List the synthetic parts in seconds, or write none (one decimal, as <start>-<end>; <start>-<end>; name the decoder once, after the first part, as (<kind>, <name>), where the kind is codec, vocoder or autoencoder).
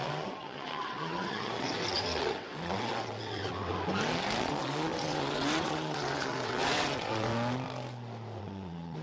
0.0-3.7 (vocoder, WaveNeXt); 4.4-7.3; 8.4-9.0